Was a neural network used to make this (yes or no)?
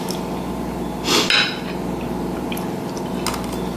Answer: no